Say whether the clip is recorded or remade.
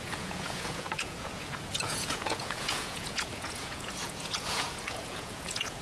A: remade